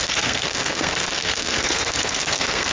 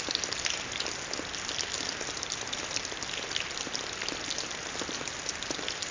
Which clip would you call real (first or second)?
second